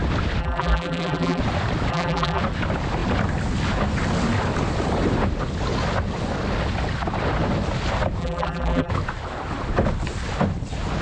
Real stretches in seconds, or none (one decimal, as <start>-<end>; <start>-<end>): 0.0-0.4; 1.4-1.9; 2.4-8.2; 8.9-11.0